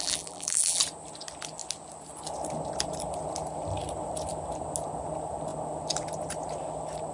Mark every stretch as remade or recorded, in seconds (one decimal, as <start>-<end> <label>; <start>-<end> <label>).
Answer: 0.0-0.8 remade; 0.8-7.1 recorded